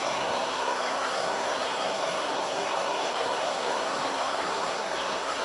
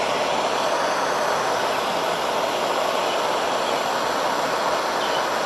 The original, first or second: second